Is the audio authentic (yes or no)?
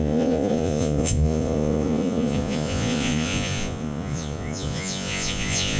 no